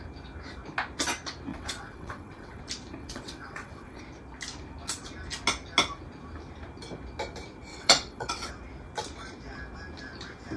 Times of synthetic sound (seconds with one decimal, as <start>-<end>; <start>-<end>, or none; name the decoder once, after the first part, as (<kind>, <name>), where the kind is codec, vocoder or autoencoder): 1.5-2.6 (vocoder, WaveNeXt); 3.0-4.0; 7.7-8.5